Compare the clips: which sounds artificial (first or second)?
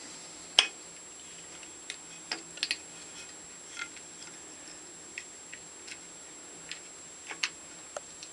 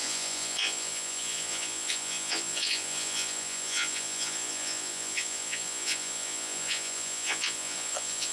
second